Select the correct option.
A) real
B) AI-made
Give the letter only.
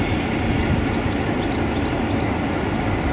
A